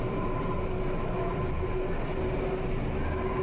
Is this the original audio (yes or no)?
yes